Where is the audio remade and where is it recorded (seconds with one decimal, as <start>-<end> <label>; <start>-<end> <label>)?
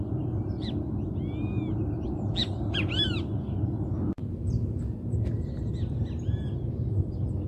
0.0-7.5 recorded